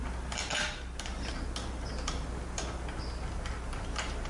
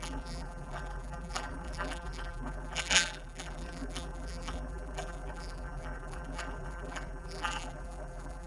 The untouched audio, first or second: first